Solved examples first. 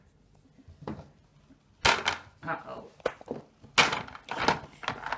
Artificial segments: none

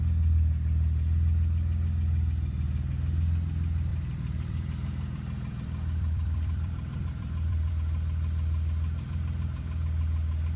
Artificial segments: 3.9-7.7

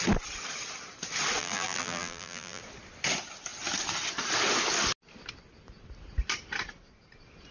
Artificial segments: 1.4-2.6

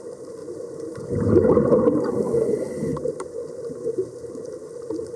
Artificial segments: 0.4-1.8; 2.9-4.5